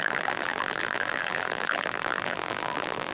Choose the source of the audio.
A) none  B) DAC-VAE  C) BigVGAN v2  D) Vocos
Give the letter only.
C